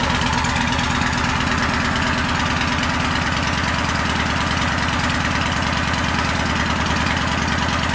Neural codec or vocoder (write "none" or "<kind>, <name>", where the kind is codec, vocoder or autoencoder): none